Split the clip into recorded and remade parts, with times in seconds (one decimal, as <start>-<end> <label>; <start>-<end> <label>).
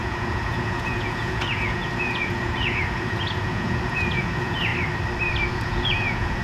0.0-4.7 remade; 4.7-5.5 recorded; 5.5-6.4 remade